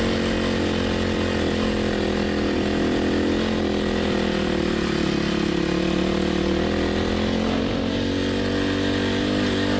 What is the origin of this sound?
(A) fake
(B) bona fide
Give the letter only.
B